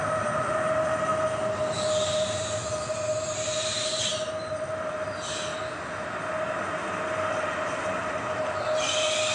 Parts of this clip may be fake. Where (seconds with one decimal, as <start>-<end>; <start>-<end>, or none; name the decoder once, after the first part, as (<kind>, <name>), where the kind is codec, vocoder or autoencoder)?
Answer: none